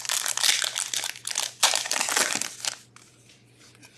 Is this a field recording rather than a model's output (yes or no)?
yes